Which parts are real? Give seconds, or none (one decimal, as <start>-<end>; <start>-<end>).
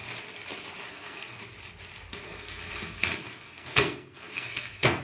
0.0-0.9; 1.4-2.1